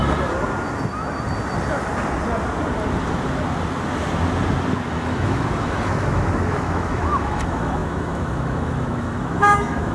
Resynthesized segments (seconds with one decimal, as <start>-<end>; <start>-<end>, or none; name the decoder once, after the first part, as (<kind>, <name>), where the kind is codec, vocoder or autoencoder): 4.9-9.9 (autoencoder, DAC-VAE)